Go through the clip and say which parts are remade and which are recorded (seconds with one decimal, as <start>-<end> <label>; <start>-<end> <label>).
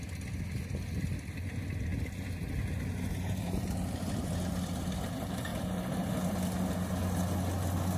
0.0-8.0 recorded